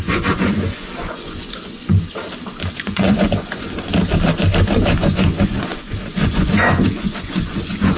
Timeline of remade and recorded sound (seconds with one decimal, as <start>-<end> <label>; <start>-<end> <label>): 0.0-1.9 remade; 1.9-2.7 recorded; 2.7-3.9 remade; 3.9-4.9 recorded; 4.9-8.0 remade